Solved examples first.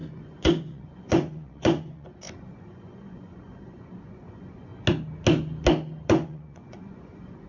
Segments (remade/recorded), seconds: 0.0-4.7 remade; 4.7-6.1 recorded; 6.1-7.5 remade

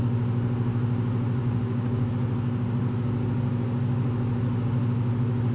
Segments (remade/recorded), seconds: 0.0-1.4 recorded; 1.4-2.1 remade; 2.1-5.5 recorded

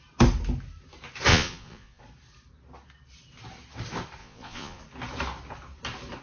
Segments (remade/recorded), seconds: 0.0-1.3 recorded; 1.3-2.0 remade; 2.0-4.2 recorded; 4.2-4.8 remade; 4.8-6.2 recorded